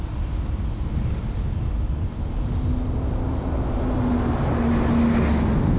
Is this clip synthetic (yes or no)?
no